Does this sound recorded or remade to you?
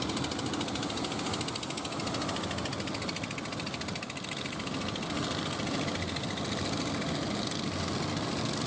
recorded